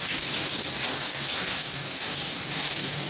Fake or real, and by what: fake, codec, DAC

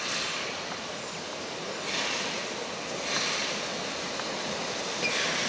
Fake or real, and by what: real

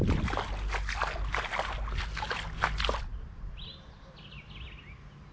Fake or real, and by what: real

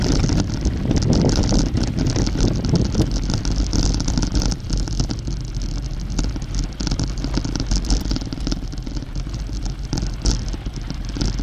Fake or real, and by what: real